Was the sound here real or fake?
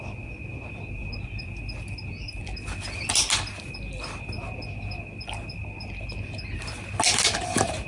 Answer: real